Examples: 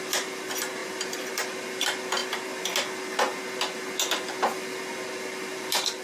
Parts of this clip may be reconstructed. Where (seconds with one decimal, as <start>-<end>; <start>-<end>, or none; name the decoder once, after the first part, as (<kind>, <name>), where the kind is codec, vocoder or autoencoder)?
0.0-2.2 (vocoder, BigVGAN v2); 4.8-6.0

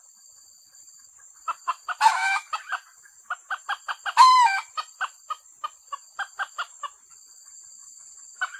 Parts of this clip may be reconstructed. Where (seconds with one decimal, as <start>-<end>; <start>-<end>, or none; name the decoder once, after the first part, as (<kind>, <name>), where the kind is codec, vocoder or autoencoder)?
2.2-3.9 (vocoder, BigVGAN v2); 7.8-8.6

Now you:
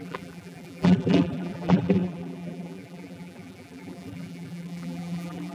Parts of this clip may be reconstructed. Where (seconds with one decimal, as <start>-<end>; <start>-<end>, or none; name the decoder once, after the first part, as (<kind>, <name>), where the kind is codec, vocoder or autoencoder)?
0.0-5.5 (vocoder, BigVGAN v2)

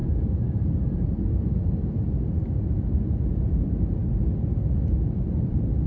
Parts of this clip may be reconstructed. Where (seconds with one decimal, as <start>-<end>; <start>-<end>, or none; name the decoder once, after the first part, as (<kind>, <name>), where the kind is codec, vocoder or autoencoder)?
0.0-4.0 (vocoder, BigVGAN v2); 5.5-5.9

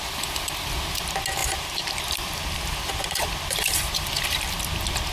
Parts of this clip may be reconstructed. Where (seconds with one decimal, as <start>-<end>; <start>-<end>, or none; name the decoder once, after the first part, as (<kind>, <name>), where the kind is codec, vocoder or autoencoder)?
1.4-4.5 (vocoder, BigVGAN v2)